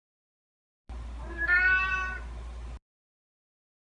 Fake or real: real